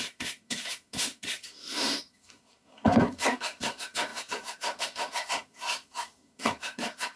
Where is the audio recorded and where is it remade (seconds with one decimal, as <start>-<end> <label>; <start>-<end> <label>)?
0.0-7.2 remade